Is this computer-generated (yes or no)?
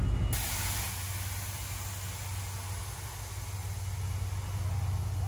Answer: no